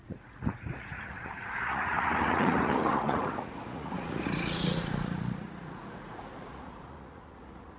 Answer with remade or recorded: remade